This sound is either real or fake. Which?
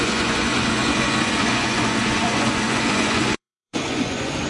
fake